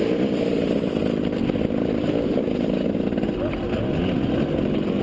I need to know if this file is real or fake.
real